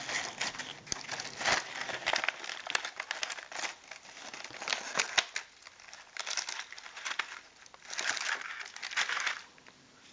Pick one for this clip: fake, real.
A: real